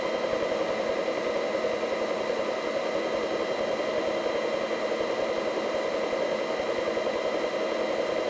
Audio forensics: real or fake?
real